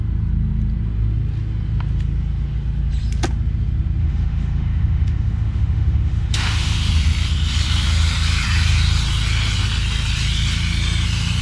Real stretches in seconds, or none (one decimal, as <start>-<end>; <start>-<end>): 0.0-4.0; 6.9-11.4